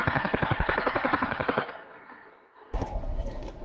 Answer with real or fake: fake